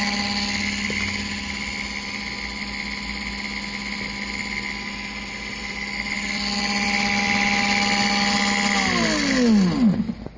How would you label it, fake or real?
real